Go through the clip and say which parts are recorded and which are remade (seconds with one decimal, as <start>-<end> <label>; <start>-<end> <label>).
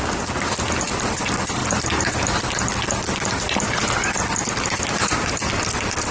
0.0-6.1 recorded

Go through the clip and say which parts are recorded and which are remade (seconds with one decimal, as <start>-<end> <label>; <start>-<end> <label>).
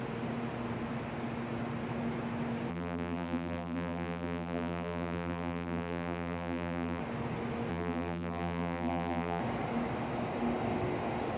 0.0-2.7 recorded; 2.7-7.0 remade; 7.0-7.7 recorded; 7.7-9.4 remade; 9.4-11.4 recorded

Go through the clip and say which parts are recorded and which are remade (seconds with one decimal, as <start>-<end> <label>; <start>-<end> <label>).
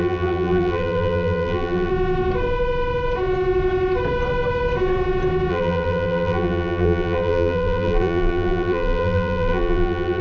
0.0-1.9 remade; 1.9-5.5 recorded; 5.5-10.2 remade